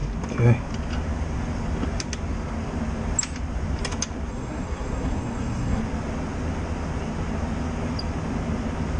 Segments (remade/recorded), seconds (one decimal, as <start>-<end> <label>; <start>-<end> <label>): 0.0-4.3 recorded; 4.3-5.8 remade; 5.8-9.0 recorded